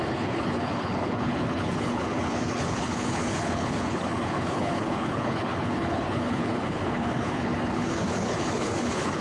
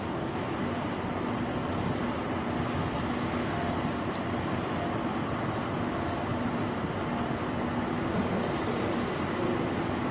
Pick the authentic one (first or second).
second